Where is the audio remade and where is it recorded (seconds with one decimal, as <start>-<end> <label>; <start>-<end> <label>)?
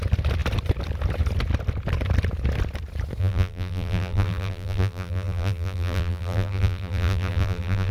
0.0-3.2 recorded; 3.2-7.9 remade